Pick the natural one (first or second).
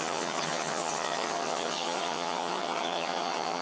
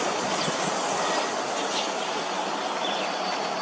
second